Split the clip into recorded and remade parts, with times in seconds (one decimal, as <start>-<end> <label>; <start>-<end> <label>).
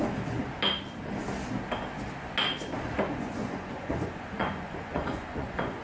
0.0-3.1 recorded; 3.1-5.8 remade